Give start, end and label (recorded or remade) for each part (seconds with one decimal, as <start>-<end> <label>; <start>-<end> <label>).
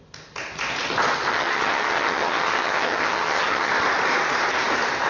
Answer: 0.0-1.3 recorded; 1.3-3.7 remade; 3.7-5.1 recorded